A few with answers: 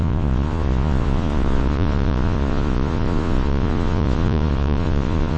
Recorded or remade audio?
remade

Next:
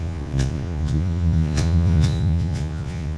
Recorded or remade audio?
remade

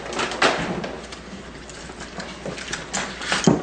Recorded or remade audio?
recorded